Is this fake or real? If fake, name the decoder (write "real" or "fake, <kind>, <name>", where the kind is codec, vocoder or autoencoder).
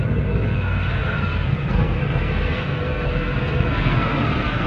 fake, codec, SNAC